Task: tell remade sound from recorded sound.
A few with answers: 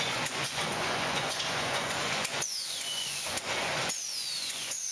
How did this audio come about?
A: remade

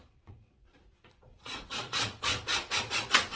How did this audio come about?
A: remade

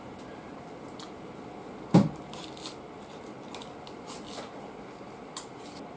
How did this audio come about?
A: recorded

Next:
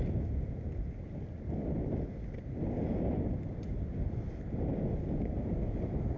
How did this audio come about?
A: recorded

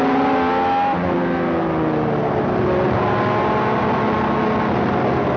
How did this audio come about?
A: recorded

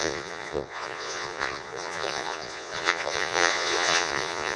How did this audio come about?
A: remade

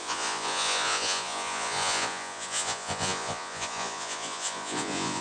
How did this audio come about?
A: remade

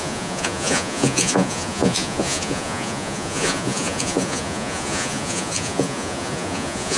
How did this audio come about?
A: remade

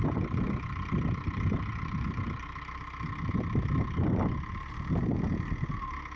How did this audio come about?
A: recorded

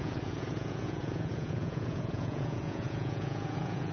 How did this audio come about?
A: remade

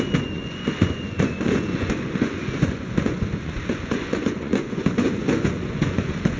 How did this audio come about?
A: remade